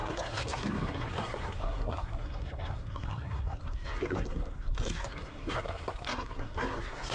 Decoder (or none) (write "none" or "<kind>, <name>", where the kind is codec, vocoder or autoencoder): codec, SNAC